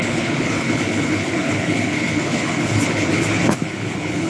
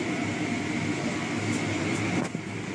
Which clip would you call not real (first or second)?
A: first